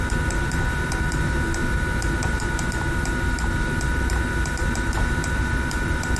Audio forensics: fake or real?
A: fake